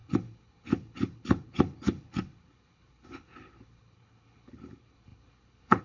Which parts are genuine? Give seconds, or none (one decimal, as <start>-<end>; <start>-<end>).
none